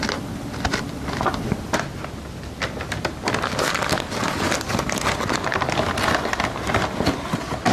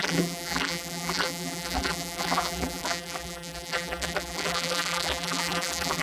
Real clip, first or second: first